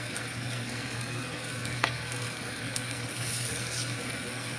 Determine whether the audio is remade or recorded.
remade